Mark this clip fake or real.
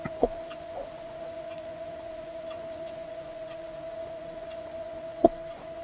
fake